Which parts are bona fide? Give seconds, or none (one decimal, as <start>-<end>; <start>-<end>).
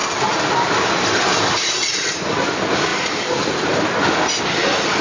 0.0-5.0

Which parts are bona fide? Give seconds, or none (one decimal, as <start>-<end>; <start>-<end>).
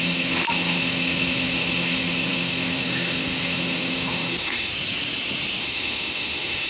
4.7-5.6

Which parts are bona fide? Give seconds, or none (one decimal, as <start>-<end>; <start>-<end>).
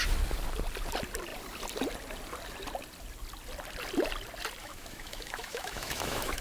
0.0-4.6